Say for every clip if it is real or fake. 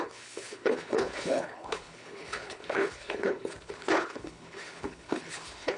fake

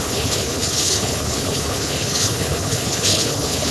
fake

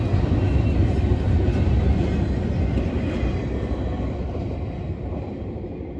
real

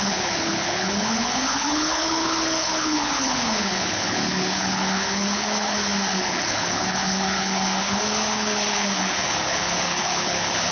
fake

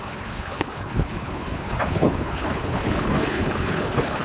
fake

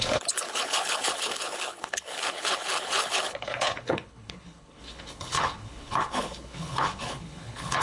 fake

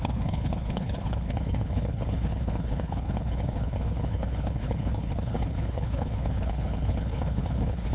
fake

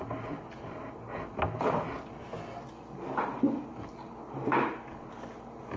real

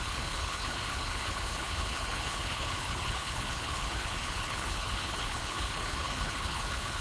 fake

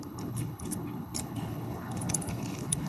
fake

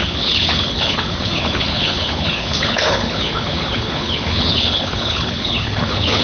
fake